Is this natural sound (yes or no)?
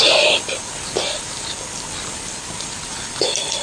yes